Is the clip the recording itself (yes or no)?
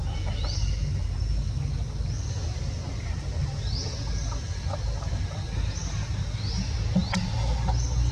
yes